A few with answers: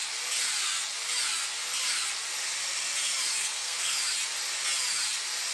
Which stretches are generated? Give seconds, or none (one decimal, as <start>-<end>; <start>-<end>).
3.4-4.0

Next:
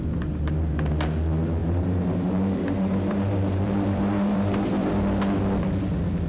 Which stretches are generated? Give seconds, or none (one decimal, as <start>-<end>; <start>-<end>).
1.6-5.0

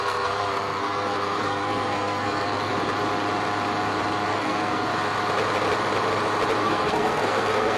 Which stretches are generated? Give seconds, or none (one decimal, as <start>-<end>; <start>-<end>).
0.0-2.7; 4.3-4.9; 6.6-7.8